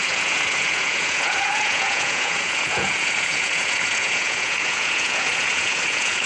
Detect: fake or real fake